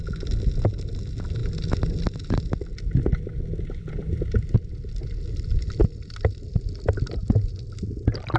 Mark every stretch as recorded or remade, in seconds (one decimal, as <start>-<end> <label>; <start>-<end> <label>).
0.0-8.4 recorded